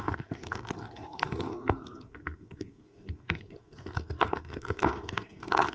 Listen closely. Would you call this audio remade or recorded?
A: remade